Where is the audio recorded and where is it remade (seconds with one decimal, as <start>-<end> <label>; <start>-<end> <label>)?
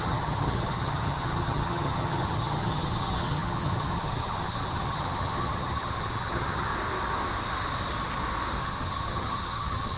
0.0-6.7 remade; 6.7-8.6 recorded; 8.6-10.0 remade